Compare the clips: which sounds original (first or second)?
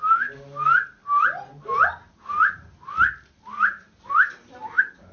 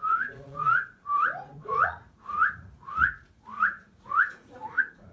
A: first